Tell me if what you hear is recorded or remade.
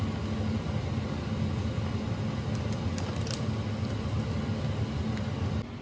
recorded